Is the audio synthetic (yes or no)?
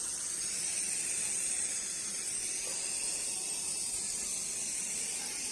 no